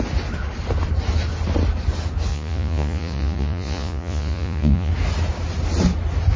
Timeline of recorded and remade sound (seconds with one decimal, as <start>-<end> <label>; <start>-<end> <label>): 0.0-2.3 recorded; 2.3-4.9 remade; 4.9-6.4 recorded